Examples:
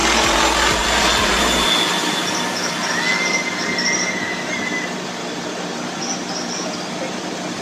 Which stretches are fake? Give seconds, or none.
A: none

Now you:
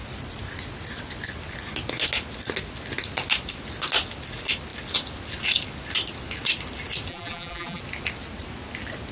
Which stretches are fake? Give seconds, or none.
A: 7.1-7.8 (vocoder, BigVGAN v2)

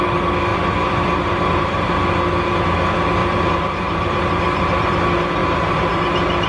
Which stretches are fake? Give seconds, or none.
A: 0.5-2.0 (vocoder, BigVGAN v2); 3.2-4.7; 5.4-6.0

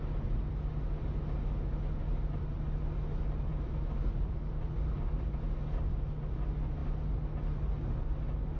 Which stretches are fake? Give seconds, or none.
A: 3.5-5.4 (vocoder, BigVGAN v2)

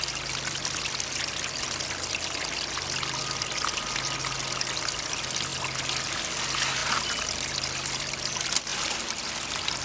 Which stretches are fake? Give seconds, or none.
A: 8.7-9.3 (vocoder, BigVGAN v2)